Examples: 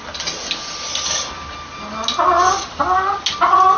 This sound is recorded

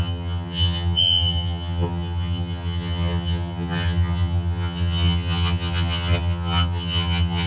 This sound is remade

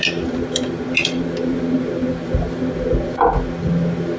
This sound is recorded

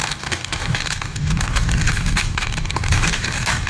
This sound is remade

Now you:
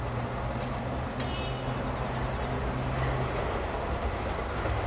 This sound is recorded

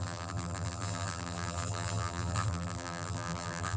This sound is remade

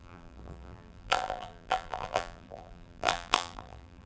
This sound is remade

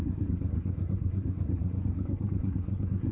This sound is remade